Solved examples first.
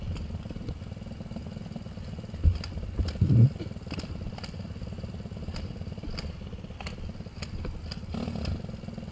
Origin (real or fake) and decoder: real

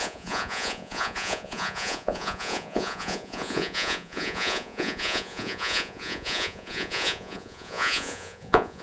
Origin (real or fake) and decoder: fake, vocoder, Vocos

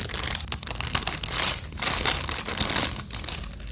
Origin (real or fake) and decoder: real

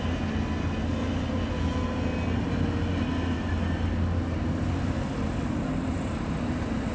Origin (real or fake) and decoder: real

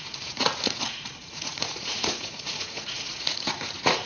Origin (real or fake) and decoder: fake, vocoder, Vocos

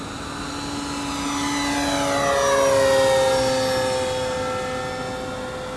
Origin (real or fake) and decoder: real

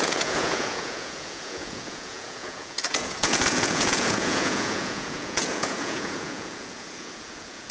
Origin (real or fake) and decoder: fake, vocoder, Vocos